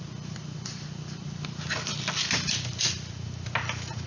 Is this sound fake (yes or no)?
no